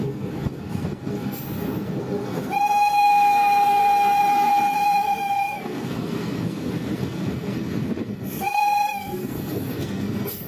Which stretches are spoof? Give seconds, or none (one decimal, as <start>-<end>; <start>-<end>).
0.0-10.5